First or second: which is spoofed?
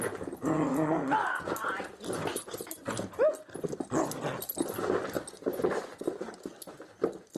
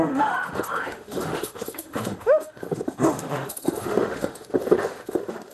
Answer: second